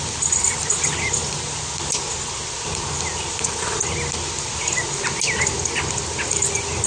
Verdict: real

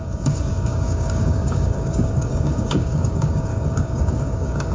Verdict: fake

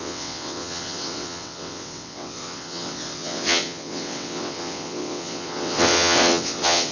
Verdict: fake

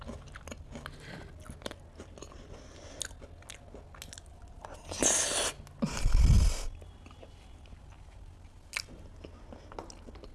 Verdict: real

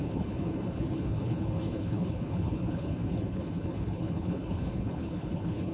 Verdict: fake